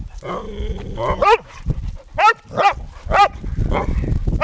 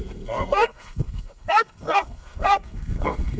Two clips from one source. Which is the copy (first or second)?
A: second